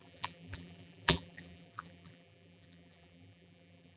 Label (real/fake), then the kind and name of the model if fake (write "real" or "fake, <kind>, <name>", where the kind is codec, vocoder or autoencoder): fake, vocoder, BigVGAN v2